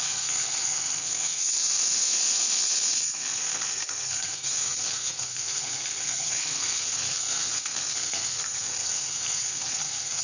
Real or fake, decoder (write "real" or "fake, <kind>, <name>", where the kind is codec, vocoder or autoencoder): fake, codec, SNAC